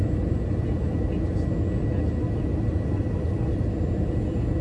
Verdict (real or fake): real